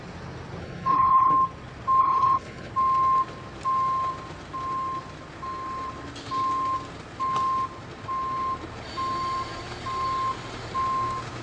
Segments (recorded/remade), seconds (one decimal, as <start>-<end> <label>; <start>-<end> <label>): 0.0-0.6 recorded; 0.6-1.3 remade; 1.3-2.0 recorded; 2.0-2.7 remade; 2.7-11.4 recorded